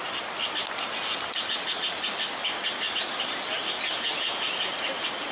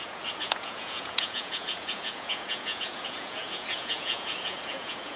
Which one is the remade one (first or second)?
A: second